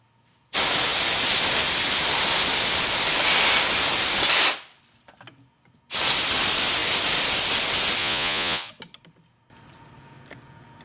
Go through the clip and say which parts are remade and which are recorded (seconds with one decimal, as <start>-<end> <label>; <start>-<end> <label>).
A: 0.0-8.0 recorded; 8.0-8.7 remade; 8.7-10.8 recorded